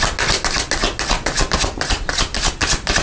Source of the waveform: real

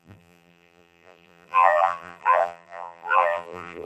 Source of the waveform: fake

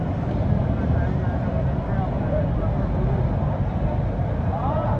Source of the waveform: real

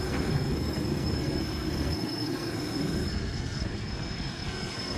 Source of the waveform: fake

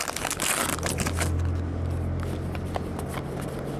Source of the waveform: real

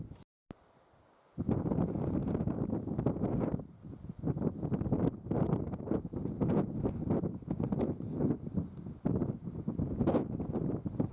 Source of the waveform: real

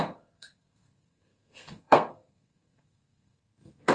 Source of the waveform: fake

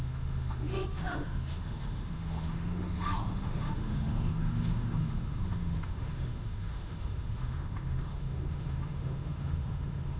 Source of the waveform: fake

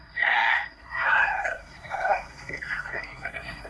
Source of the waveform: fake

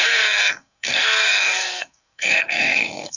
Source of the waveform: fake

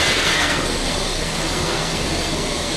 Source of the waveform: fake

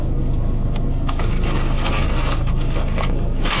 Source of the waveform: fake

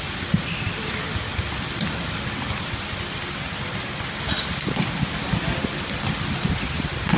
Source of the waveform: real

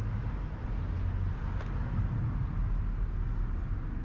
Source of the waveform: real